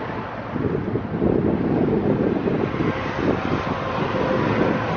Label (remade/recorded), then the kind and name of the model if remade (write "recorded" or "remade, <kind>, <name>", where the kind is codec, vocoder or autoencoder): recorded